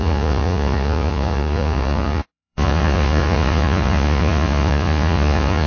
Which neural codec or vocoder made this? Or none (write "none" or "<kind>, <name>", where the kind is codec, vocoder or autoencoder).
vocoder, Vocos